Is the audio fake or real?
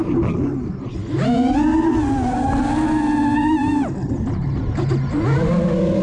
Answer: real